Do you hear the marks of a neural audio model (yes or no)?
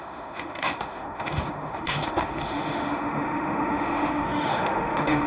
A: yes